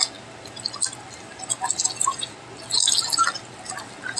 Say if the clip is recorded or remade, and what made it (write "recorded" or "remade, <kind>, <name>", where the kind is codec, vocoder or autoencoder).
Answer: recorded